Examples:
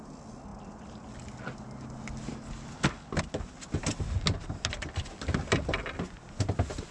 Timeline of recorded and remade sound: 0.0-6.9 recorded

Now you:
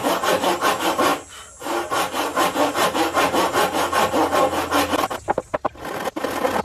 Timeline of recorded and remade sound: 0.0-1.1 recorded; 1.1-1.9 remade; 1.9-6.6 recorded

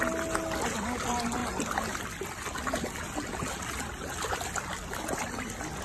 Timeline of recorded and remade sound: 0.0-5.8 recorded

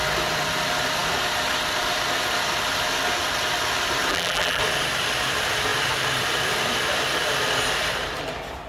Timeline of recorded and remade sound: 0.0-4.1 recorded; 4.1-4.6 remade; 4.6-8.7 recorded

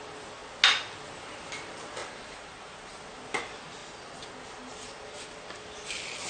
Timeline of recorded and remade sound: 0.0-2.0 recorded; 2.0-3.0 remade; 3.0-6.3 recorded

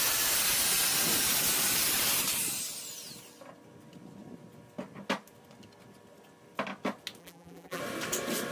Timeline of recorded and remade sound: 0.0-7.2 recorded; 7.2-7.8 remade; 7.8-8.5 recorded

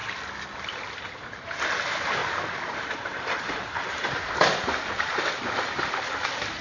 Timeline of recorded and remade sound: 0.0-2.2 recorded; 2.2-3.5 remade; 3.5-3.9 recorded; 3.9-6.6 remade

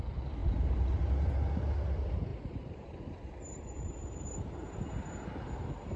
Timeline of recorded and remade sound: 0.0-0.4 recorded; 0.4-1.0 remade; 1.0-2.3 recorded; 2.3-4.5 remade; 4.5-6.0 recorded